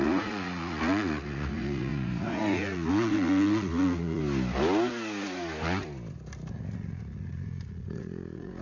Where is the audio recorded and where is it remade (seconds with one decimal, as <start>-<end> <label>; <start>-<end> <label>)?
0.0-4.2 remade; 4.2-6.5 recorded; 6.5-8.6 remade